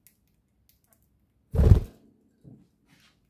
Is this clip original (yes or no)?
yes